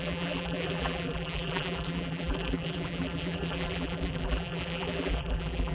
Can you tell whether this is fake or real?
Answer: fake